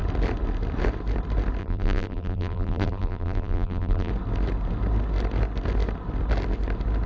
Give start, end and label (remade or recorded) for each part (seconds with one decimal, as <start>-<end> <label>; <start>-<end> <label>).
0.0-1.6 recorded; 1.6-4.1 remade; 4.1-7.1 recorded